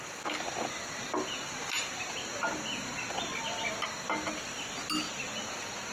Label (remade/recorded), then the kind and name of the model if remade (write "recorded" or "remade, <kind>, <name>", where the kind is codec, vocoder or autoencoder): recorded